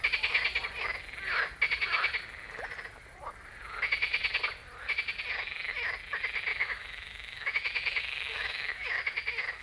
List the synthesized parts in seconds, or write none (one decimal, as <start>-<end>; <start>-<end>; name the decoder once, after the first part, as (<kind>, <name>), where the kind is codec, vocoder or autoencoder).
6.5-9.0 (autoencoder, DAC-VAE)